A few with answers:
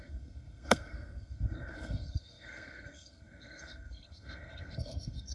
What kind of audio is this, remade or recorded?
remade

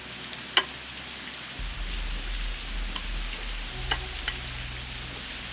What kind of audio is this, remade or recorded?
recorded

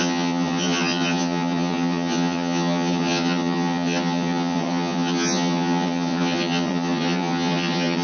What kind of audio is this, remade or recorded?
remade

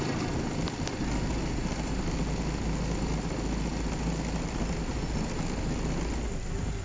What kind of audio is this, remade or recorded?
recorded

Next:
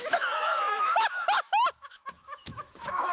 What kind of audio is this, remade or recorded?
remade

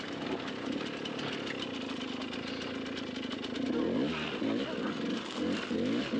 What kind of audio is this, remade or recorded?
recorded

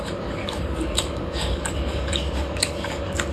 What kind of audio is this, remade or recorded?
remade